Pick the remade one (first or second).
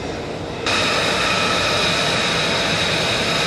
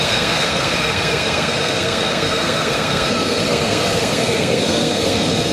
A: second